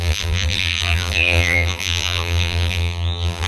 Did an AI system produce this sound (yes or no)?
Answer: yes